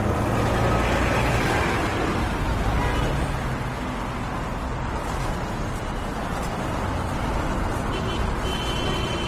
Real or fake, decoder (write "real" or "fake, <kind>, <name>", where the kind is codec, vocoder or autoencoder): real